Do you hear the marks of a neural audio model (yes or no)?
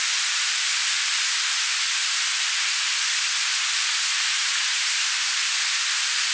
no